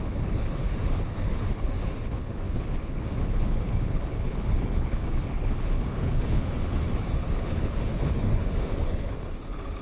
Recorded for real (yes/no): no